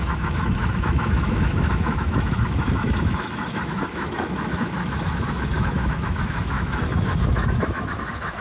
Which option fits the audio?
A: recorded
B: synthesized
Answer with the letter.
B